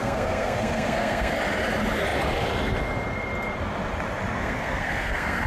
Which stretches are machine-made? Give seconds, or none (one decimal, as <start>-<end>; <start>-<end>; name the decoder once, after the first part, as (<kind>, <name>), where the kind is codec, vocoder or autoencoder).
0.0-1.3 (codec, SNAC); 4.4-5.5